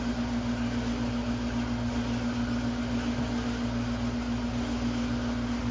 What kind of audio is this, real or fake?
real